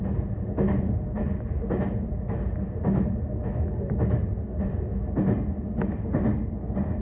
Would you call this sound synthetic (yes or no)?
no